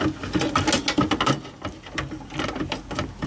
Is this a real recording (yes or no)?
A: yes